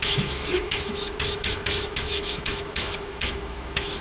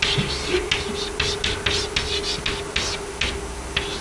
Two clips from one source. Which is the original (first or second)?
second